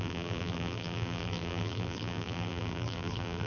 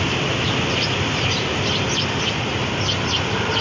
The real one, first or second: second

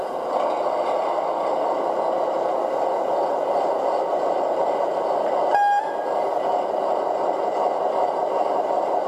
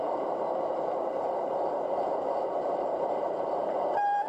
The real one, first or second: first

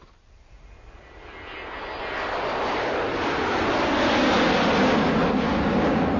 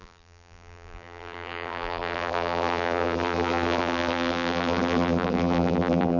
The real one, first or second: first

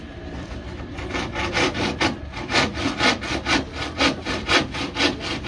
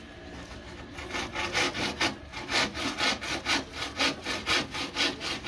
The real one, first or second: second